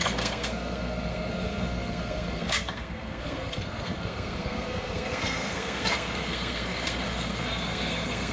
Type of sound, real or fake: fake